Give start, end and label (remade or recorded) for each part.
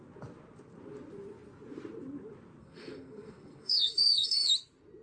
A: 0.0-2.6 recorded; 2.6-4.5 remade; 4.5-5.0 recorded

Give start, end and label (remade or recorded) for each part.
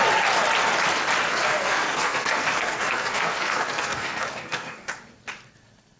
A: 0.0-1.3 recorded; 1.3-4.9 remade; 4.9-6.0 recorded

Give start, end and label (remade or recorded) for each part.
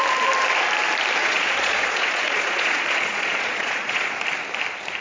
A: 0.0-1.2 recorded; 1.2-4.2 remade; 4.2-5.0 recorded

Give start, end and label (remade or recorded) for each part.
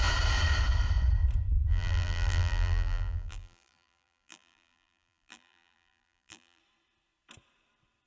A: 0.0-1.7 recorded; 1.7-6.6 remade; 6.6-8.1 recorded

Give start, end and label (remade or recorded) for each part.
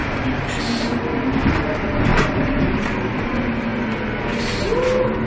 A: 0.0-2.1 recorded; 2.1-3.3 remade; 3.3-5.3 recorded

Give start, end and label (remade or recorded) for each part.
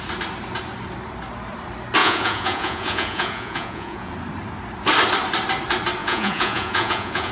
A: 0.0-2.0 recorded; 2.0-4.1 remade; 4.1-6.0 recorded; 6.0-7.3 remade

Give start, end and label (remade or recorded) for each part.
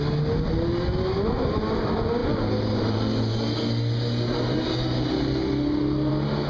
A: 0.0-6.5 recorded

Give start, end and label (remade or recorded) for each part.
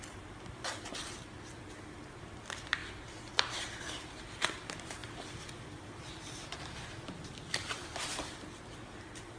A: 0.0-9.4 recorded